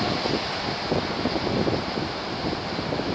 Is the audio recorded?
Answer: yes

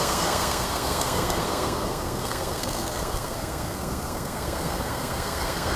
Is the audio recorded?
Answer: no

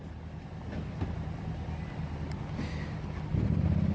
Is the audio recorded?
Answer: yes